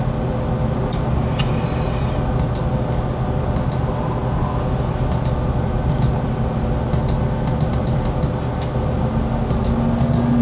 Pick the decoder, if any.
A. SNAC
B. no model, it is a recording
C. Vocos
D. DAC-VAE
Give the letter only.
B